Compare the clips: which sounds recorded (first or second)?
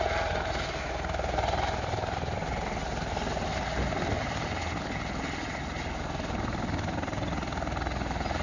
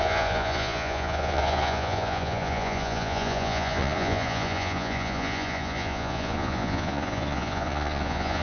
first